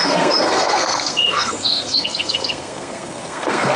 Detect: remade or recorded remade